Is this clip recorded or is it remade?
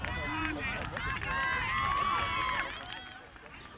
recorded